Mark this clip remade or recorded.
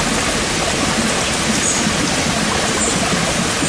recorded